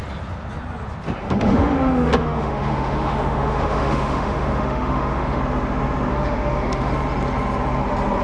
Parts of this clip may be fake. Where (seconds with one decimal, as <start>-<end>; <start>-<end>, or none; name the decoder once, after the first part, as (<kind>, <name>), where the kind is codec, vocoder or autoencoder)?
1.2-5.4 (autoencoder, DAC-VAE); 6.1-6.9